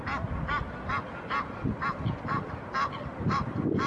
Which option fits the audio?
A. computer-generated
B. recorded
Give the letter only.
B